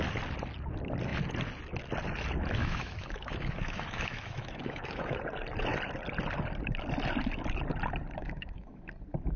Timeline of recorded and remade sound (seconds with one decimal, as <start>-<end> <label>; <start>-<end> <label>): 0.0-2.6 recorded; 2.6-5.2 remade; 5.2-8.2 recorded; 8.2-8.9 remade; 8.9-9.4 recorded